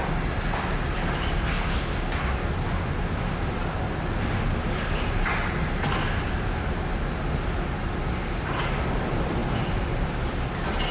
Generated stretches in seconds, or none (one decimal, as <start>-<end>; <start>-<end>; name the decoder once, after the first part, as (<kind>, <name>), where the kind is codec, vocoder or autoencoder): none